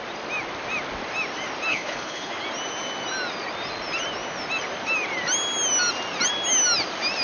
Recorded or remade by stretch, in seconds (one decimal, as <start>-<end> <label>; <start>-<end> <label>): 0.0-1.7 recorded; 1.7-2.3 remade; 2.3-7.2 recorded